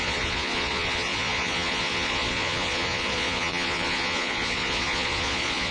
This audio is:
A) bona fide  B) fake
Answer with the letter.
B